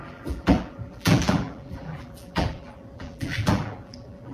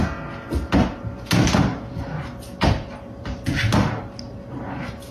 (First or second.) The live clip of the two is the second